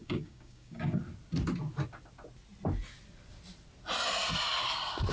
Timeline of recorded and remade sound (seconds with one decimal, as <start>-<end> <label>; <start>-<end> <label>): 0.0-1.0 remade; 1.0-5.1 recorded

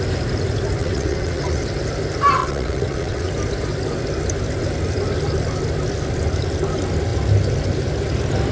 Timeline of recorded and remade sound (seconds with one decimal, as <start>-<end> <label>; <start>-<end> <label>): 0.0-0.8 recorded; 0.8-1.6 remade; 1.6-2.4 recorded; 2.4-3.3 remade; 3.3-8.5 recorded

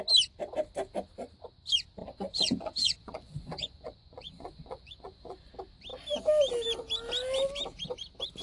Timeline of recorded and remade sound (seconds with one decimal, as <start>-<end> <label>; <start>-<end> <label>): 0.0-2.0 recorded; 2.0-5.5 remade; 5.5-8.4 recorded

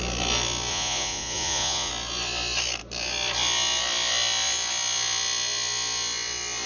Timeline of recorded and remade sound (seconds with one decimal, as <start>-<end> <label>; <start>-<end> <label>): 0.0-0.7 recorded; 0.7-1.9 remade; 1.9-6.7 recorded